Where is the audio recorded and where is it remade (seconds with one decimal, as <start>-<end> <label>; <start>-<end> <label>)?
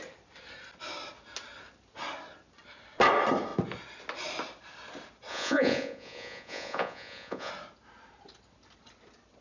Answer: 0.0-5.3 recorded; 5.3-7.5 remade; 7.5-9.4 recorded